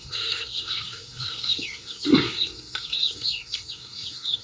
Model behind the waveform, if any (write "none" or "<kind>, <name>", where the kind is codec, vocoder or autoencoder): codec, SNAC